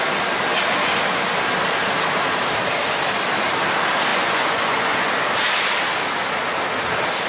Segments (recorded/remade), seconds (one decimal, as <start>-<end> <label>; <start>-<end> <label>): 0.0-4.1 recorded; 4.1-5.1 remade; 5.1-7.3 recorded